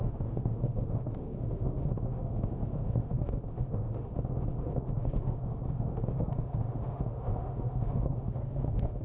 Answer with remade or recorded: remade